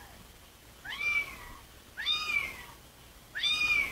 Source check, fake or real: real